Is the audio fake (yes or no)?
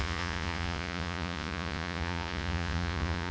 yes